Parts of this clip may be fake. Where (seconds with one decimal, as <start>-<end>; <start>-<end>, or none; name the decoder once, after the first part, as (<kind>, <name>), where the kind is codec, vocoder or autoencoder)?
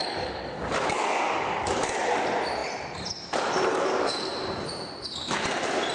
0.0-2.0 (codec, DAC); 3.7-4.3